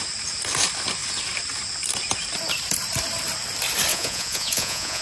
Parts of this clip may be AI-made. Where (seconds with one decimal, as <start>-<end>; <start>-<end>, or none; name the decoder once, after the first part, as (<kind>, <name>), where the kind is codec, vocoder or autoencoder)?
3.9-5.0 (vocoder, Vocos)